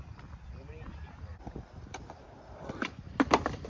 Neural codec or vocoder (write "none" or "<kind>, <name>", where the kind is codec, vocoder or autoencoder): none